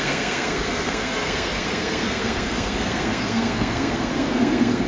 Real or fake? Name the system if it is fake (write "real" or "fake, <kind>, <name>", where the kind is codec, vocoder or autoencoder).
fake, codec, SNAC